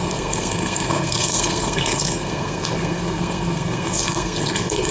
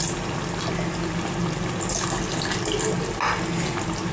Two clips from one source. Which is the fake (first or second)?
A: first